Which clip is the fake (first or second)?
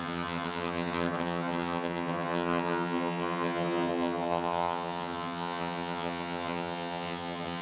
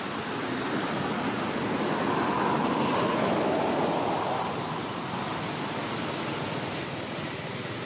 first